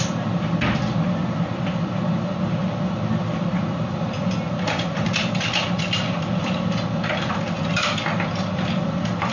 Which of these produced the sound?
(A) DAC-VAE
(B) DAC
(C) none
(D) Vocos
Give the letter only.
C